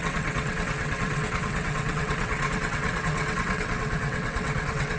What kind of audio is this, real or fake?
fake